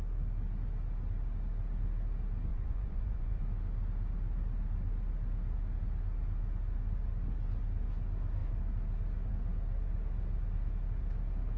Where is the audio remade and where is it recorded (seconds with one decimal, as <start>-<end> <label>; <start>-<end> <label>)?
0.0-2.5 recorded; 2.5-3.5 remade; 3.5-11.6 recorded